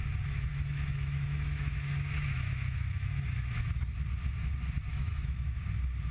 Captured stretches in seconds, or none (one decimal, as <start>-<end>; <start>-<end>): 0.0-0.5; 3.8-4.9; 5.6-6.1